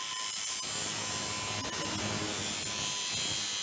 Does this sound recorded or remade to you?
recorded